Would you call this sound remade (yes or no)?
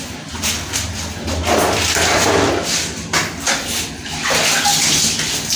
no